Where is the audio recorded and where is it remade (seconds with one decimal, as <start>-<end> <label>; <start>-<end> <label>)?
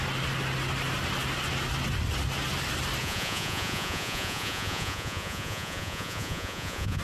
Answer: 0.0-3.0 recorded; 3.0-7.0 remade